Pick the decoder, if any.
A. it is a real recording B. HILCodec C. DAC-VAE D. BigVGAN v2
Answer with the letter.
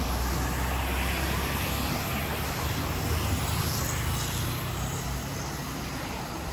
A